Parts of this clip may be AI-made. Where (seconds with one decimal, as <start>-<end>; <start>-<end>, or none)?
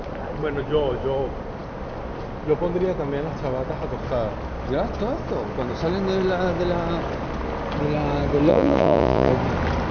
8.5-9.3